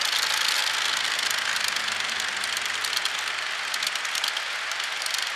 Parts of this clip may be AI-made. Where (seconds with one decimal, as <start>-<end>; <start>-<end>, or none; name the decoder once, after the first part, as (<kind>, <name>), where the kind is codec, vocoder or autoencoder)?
none

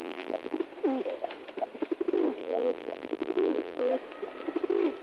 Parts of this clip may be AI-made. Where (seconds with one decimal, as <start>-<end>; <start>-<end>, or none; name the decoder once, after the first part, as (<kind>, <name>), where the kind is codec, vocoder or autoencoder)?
0.0-0.6 (vocoder, BigVGAN v2); 2.4-3.9